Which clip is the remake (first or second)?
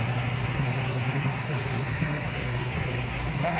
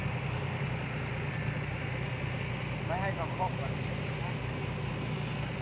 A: first